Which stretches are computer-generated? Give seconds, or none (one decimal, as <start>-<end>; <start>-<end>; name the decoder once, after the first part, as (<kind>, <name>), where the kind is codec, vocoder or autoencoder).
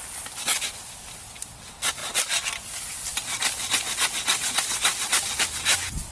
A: none